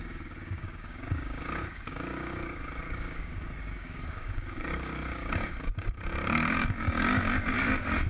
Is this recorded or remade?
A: remade